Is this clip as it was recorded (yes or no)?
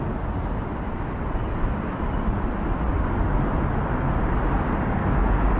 yes